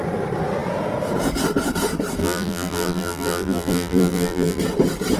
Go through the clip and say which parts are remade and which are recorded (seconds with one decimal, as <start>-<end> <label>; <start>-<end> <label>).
0.0-2.2 recorded; 2.2-4.6 remade; 4.6-5.2 recorded